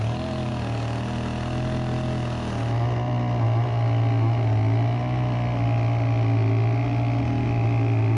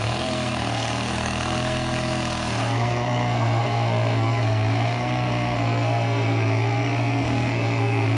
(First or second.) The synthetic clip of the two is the second